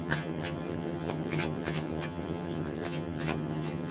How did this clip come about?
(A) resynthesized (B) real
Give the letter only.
A